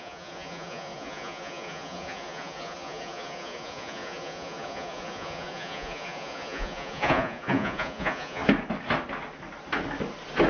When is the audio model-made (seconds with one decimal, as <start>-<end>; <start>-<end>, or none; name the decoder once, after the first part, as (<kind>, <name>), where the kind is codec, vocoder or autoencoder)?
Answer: 0.0-8.4 (vocoder, Vocos)